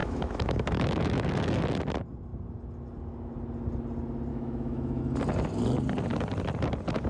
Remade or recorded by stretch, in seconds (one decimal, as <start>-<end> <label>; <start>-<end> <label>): 0.0-1.6 remade; 1.6-4.3 recorded; 4.3-5.0 remade; 5.0-7.1 recorded